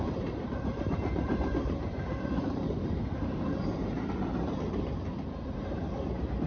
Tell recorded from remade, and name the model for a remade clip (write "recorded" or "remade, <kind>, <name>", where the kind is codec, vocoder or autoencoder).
remade, vocoder, BigVGAN v2